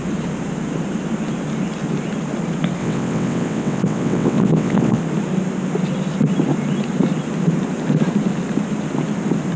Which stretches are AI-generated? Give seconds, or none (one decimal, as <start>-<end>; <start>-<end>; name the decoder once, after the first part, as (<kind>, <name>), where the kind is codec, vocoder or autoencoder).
2.8-5.0 (vocoder, WaveNeXt)